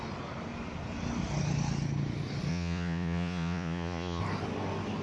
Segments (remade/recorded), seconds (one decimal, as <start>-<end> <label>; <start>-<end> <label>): 0.0-2.5 recorded; 2.5-4.2 remade; 4.2-5.0 recorded